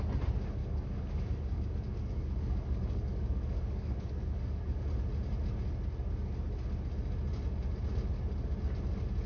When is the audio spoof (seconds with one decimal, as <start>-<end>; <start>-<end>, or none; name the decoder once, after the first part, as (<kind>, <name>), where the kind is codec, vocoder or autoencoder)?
0.6-4.8 (codec, DAC)